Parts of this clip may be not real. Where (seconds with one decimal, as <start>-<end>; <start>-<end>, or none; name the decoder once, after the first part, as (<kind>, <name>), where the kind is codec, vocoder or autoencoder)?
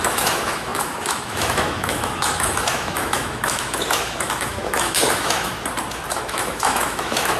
0.0-5.5 (autoencoder, DAC-VAE); 6.1-7.4